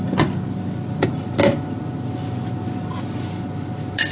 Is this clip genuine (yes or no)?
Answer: yes